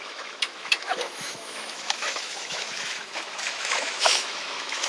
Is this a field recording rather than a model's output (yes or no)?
no